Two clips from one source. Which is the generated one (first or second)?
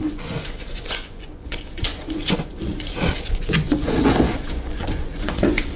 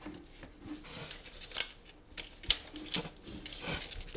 first